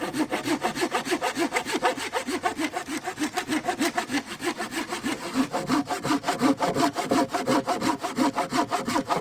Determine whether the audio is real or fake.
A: real